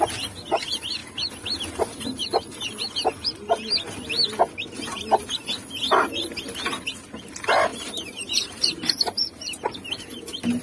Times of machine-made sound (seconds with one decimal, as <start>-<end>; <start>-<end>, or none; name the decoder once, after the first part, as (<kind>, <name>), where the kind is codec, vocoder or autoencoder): 7.7-9.6 (vocoder, BigVGAN v2)